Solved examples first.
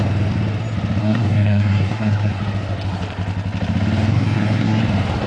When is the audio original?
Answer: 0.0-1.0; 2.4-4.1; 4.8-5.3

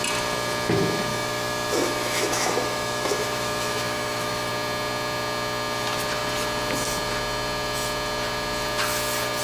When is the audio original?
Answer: 0.0-1.1; 4.5-9.4

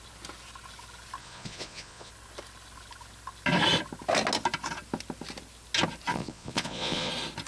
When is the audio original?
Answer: 0.0-1.2; 2.1-6.1; 7.1-7.5

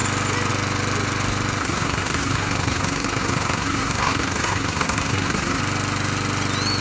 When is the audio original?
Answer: 0.0-1.6; 5.6-6.8

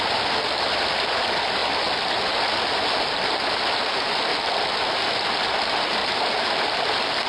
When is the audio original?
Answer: 1.6-3.0; 4.3-5.6; 6.0-6.7

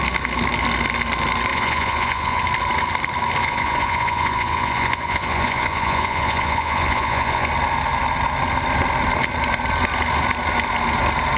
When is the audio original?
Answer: 0.0-1.5; 2.4-3.4; 7.5-11.4

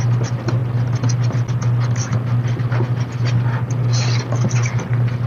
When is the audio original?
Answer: 0.0-5.3

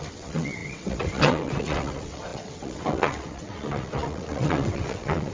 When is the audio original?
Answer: none